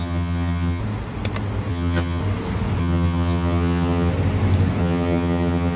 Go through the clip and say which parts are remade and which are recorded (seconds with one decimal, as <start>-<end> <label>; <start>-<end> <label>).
0.0-0.8 remade; 0.8-1.7 recorded; 1.7-2.2 remade; 2.2-2.8 recorded; 2.8-4.1 remade; 4.1-4.8 recorded; 4.8-5.8 remade